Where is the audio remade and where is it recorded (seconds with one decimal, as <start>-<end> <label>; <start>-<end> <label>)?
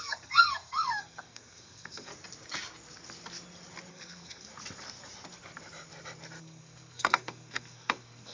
0.0-2.1 remade; 2.1-3.9 recorded; 3.9-4.5 remade; 4.5-6.4 recorded; 6.4-8.3 remade